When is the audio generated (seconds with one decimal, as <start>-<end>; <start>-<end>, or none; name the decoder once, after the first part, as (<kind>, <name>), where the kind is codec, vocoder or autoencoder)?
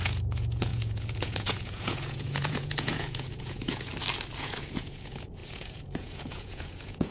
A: 0.0-3.9 (vocoder, Vocos); 4.4-7.1